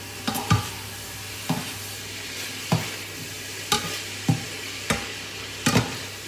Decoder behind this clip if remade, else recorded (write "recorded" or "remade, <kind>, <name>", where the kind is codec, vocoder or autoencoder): recorded